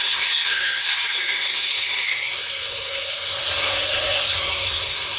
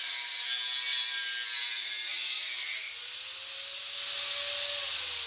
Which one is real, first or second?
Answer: second